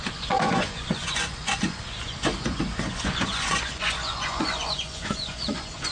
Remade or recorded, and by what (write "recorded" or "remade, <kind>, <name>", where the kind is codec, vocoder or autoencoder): remade, vocoder, Vocos